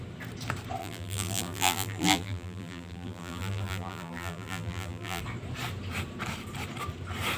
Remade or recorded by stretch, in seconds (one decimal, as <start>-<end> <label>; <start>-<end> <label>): 0.0-0.8 recorded; 0.8-5.2 remade; 5.2-7.4 recorded